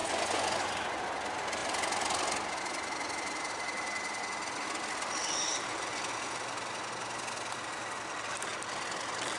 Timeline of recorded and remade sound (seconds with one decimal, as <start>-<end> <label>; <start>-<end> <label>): 0.0-1.0 remade; 1.0-9.4 recorded